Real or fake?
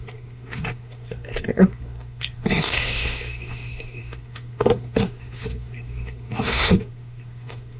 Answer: fake